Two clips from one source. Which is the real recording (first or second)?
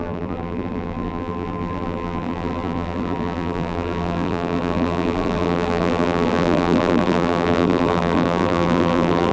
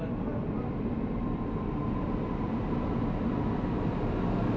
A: second